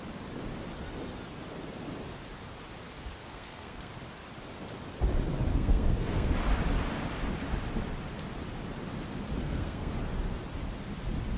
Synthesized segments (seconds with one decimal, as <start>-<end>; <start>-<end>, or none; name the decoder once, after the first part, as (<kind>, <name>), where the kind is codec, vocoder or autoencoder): 3.2-3.9 (codec, SNAC); 5.5-6.3; 9.4-9.9